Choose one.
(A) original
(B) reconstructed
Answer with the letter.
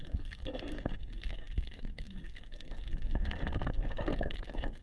B